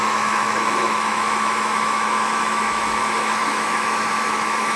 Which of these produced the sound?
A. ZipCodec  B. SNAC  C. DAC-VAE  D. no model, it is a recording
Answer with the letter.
C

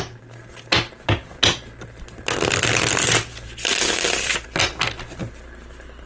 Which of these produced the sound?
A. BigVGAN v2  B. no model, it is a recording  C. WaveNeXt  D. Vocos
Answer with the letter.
B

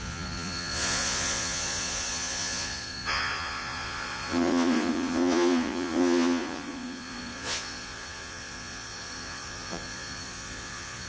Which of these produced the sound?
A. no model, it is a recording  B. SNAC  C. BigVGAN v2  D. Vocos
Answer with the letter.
D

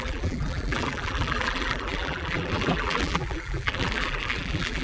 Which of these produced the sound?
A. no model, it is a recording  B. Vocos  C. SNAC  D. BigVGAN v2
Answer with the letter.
D